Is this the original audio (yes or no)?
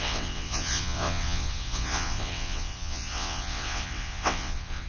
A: no